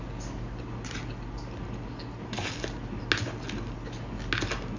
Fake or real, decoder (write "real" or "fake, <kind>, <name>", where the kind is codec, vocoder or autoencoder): real